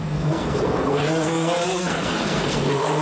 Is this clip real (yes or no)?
no